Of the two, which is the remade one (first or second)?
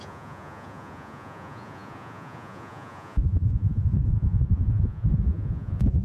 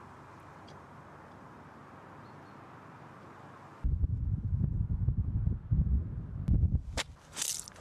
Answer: first